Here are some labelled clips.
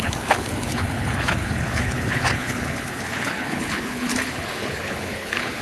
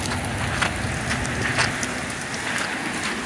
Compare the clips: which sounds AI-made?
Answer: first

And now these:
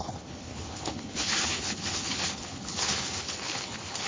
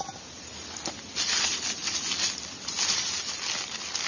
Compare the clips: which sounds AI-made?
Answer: first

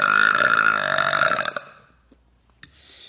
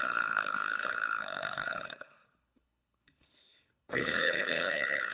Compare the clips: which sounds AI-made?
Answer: second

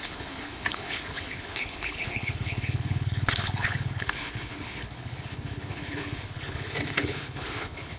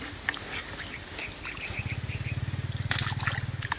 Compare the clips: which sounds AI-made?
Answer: first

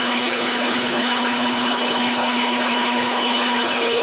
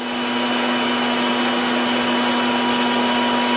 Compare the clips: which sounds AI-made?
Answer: first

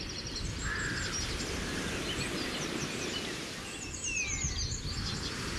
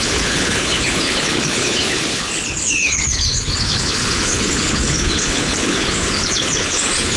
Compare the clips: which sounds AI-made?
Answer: second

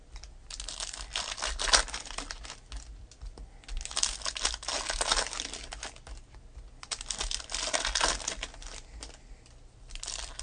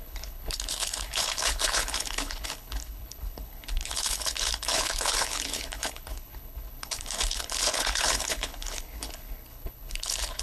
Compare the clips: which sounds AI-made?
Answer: second